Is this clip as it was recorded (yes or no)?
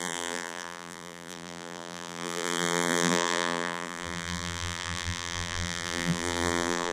no